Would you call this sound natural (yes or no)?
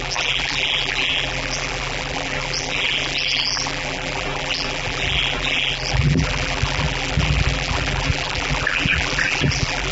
no